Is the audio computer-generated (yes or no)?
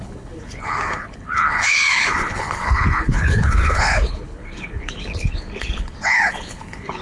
yes